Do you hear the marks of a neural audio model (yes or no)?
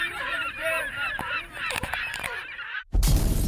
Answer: yes